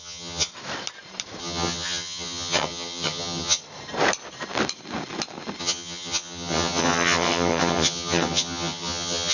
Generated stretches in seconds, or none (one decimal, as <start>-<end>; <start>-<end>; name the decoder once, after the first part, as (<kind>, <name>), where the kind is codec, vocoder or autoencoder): 0.0-0.5 (vocoder, HiFi-GAN); 1.4-3.6; 5.6-9.3